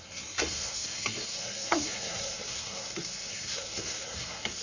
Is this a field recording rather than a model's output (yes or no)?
no